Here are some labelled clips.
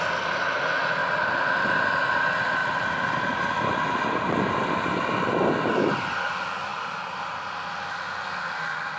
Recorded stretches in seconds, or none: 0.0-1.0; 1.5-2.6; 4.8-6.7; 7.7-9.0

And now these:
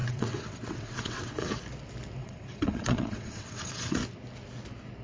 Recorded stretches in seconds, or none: 1.5-2.2; 4.0-5.0

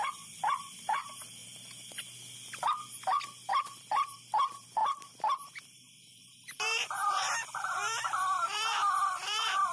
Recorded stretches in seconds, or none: 1.4-3.5

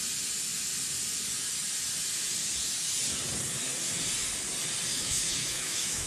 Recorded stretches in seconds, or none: 0.0-4.9